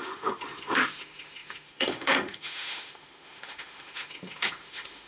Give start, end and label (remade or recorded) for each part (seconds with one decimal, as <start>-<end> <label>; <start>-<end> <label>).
0.0-5.1 remade